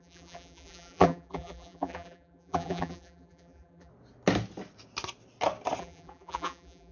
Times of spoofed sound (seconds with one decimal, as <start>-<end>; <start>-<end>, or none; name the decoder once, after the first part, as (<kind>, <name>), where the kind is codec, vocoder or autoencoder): 0.0-3.9 (vocoder, BigVGAN v2); 5.8-6.9